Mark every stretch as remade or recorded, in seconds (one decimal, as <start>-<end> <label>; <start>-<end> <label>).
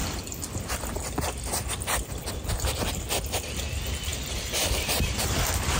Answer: 0.0-0.8 remade; 0.8-4.1 recorded; 4.1-5.8 remade